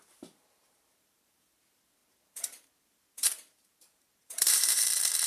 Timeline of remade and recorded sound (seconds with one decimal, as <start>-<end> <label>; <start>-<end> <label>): 0.0-5.3 remade